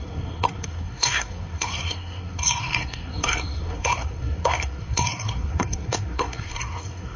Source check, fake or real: fake